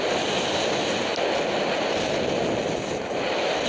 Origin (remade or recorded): recorded